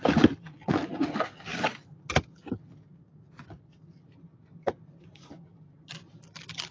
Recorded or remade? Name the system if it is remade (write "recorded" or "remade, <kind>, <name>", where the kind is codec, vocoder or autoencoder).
recorded